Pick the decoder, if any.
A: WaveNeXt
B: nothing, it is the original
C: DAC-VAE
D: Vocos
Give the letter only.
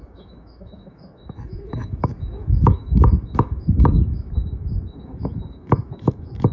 C